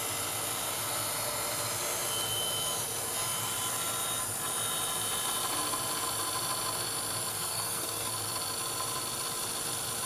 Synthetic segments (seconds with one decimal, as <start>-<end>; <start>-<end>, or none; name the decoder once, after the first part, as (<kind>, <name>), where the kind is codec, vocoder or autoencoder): 7.3-8.1 (codec, SNAC)